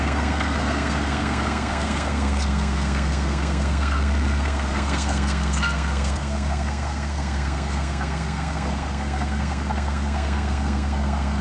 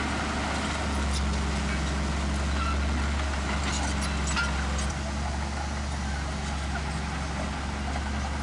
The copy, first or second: first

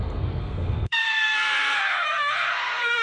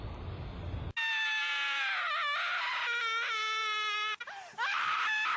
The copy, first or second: first